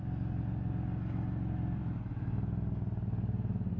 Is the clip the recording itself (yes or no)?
yes